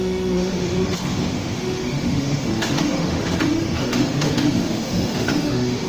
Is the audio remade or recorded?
remade